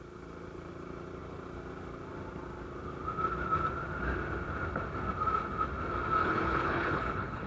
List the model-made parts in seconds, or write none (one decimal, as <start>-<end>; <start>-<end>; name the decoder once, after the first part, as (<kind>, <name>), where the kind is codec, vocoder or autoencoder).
6.2-7.5 (codec, HILCodec)